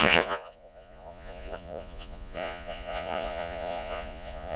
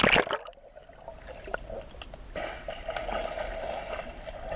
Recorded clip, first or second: second